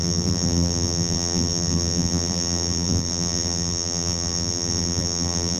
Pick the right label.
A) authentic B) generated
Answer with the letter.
B